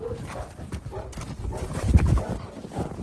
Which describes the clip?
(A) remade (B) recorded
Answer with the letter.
A